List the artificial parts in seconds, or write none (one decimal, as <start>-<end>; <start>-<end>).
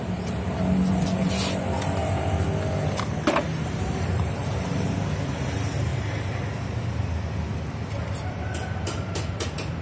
3.5-4.9; 5.9-6.4